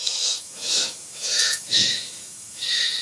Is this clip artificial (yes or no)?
yes